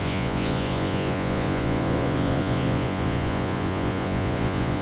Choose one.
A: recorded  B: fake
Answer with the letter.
B